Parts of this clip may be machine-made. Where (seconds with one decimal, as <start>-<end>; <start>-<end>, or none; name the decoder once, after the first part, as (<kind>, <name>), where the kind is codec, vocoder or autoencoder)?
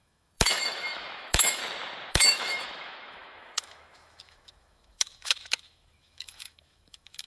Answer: 0.0-1.6 (autoencoder, DAC-VAE); 2.1-7.3